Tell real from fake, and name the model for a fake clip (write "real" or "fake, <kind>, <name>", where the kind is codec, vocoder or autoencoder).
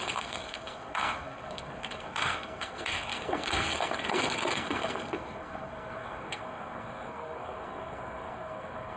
fake, codec, SNAC